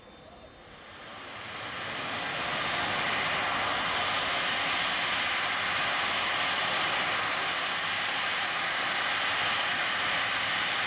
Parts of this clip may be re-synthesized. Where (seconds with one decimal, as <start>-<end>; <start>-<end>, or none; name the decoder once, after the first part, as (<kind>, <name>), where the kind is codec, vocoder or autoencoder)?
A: none